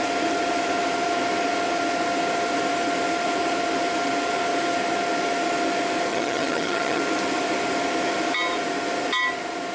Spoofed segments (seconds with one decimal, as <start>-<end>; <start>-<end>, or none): 6.1-7.0